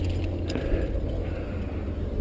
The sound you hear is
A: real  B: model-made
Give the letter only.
A